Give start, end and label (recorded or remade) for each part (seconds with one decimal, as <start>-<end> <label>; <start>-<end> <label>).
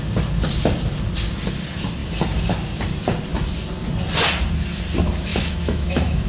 0.0-5.3 recorded; 5.3-6.3 remade